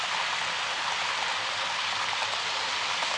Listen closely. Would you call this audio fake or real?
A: real